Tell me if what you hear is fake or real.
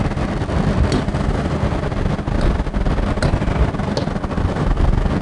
real